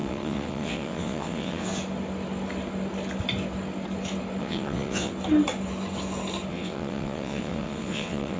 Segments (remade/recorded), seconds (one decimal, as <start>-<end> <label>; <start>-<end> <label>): 0.0-1.7 remade; 1.7-4.4 recorded; 4.4-5.1 remade; 5.1-6.5 recorded; 6.5-8.4 remade